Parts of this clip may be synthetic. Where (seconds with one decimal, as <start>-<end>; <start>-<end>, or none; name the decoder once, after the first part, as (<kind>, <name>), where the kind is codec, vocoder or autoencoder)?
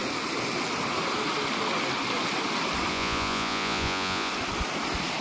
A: 2.9-4.3 (vocoder, Vocos)